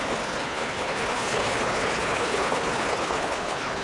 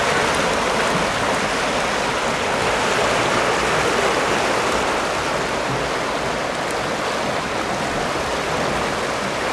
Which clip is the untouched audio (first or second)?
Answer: second